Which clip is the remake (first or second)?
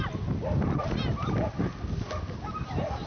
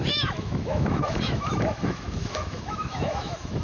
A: second